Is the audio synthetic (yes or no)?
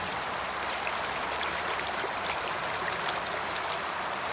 no